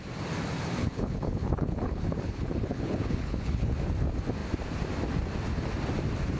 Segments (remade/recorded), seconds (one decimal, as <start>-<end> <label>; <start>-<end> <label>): 0.0-0.8 recorded; 0.8-3.8 remade; 3.8-6.4 recorded